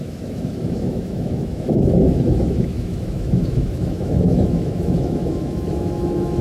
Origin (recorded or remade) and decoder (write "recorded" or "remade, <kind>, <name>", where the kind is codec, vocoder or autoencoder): remade, autoencoder, DAC-VAE